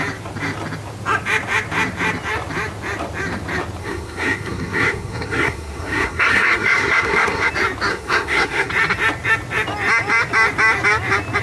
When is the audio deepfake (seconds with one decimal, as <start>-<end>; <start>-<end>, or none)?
3.8-7.5; 7.9-8.7